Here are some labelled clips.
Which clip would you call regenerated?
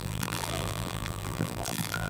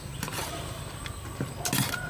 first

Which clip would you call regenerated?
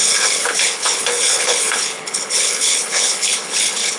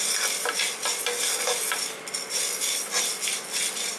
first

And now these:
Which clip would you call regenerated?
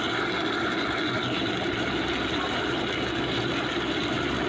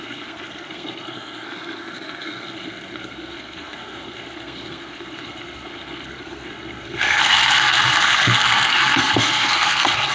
second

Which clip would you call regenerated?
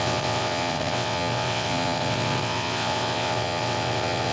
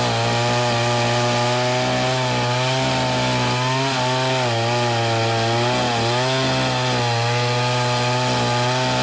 first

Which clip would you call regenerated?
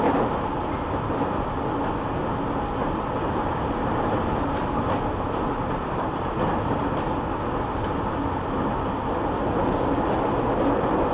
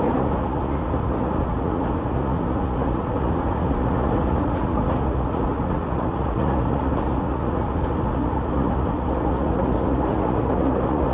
second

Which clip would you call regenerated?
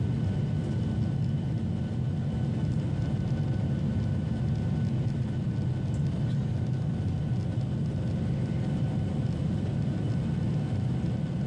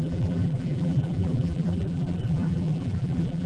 second